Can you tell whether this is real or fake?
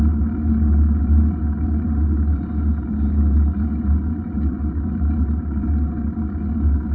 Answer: real